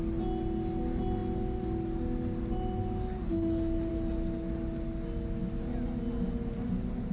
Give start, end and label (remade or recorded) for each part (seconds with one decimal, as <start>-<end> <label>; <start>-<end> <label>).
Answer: 0.0-7.1 recorded